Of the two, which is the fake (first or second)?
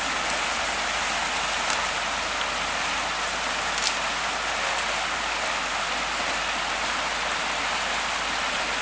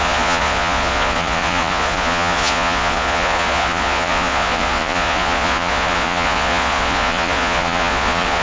second